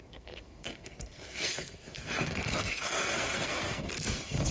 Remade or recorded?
remade